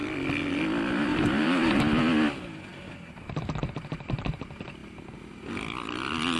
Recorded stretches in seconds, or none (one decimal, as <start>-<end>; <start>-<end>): 0.0-1.1; 1.8-4.8; 5.5-6.4

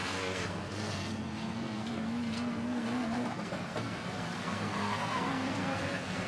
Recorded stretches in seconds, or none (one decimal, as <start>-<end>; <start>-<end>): none

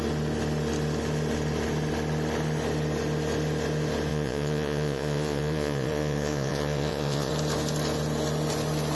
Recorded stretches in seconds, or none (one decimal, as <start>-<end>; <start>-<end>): 0.0-4.1; 7.3-8.9

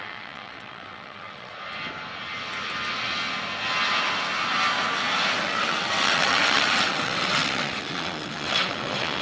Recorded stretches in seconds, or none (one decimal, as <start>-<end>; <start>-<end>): 1.5-5.4

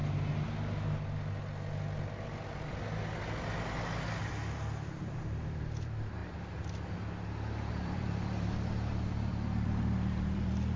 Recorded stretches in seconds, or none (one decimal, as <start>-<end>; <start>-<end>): 0.0-4.9; 6.2-7.7